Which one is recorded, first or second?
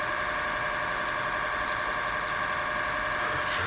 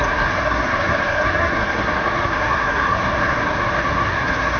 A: first